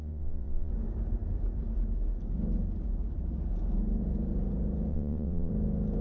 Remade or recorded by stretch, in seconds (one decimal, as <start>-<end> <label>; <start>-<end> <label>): 0.0-0.7 remade; 0.7-4.9 recorded; 4.9-5.5 remade; 5.5-6.0 recorded

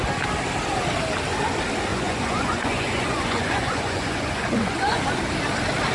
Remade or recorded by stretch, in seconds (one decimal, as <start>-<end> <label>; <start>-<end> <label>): 0.0-1.9 recorded; 1.9-5.0 remade; 5.0-5.9 recorded

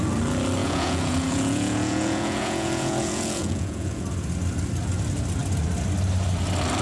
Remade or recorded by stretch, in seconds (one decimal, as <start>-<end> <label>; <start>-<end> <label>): 0.0-0.6 recorded; 0.6-4.0 remade; 4.0-6.8 recorded

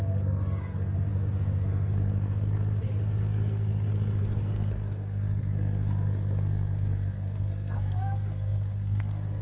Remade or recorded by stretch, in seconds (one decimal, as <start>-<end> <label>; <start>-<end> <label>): 0.0-9.4 remade

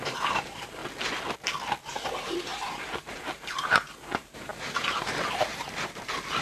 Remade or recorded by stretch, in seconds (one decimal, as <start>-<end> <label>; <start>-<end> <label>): 0.0-0.8 remade; 0.8-1.8 recorded; 1.8-6.4 remade

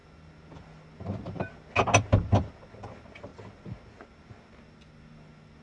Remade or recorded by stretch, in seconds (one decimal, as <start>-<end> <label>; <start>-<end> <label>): 0.0-5.6 recorded